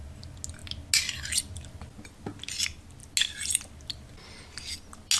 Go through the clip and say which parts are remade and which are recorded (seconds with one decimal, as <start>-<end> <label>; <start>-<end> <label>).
0.0-5.2 recorded